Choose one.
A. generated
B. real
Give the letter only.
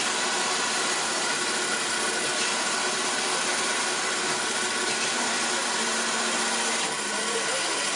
B